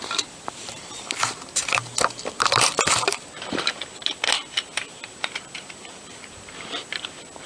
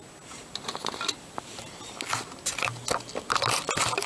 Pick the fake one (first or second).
first